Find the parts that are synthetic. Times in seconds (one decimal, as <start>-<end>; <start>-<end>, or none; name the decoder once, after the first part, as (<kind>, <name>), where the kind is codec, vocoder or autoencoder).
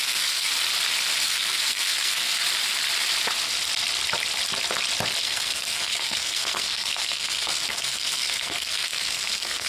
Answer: 0.0-0.5 (codec, SNAC); 1.2-2.4; 5.2-9.7